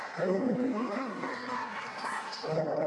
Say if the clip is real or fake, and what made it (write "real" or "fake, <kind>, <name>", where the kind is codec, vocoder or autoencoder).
fake, codec, SNAC